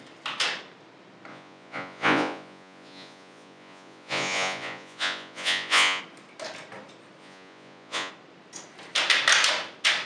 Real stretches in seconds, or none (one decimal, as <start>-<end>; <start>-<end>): 0.0-1.3; 6.0-7.2; 8.1-10.1